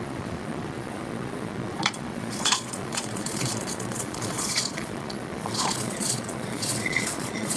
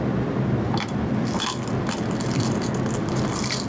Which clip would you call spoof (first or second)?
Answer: first